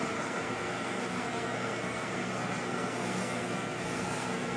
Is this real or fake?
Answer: fake